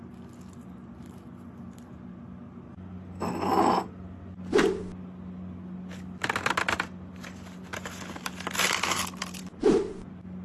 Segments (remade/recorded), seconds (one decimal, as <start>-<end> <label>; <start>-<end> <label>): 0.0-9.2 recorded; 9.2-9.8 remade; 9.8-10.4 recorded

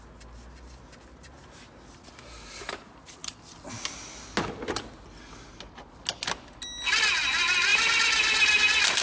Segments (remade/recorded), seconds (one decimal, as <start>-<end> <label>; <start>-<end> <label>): 0.0-7.7 recorded; 7.7-8.6 remade; 8.6-9.0 recorded

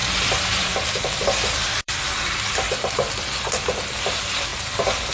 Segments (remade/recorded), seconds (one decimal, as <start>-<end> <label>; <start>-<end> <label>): 0.0-3.1 remade; 3.1-5.1 recorded